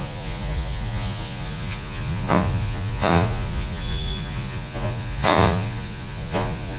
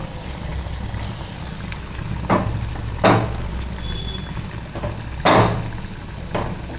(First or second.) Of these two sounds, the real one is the second